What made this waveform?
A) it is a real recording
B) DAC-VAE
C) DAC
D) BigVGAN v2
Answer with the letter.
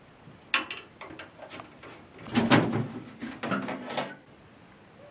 A